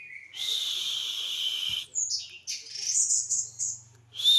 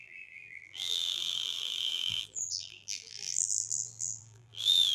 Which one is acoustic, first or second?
first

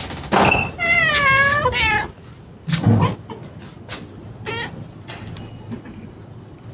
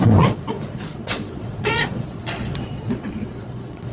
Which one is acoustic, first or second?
first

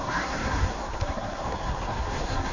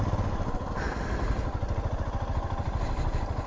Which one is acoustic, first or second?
second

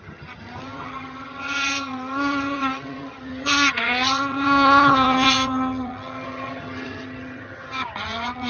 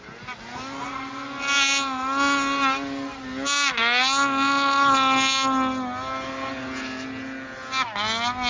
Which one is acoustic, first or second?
second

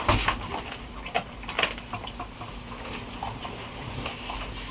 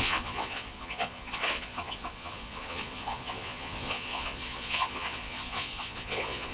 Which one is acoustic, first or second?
first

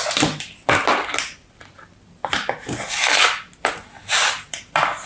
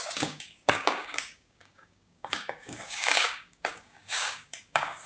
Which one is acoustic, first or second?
first